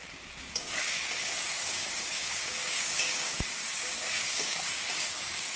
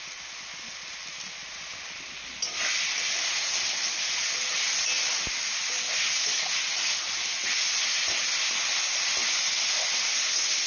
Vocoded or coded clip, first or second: first